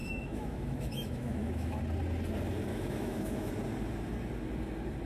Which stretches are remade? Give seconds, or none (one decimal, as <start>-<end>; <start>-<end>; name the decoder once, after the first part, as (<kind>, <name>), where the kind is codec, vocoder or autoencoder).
0.0-1.8 (autoencoder, DAC-VAE); 2.7-3.5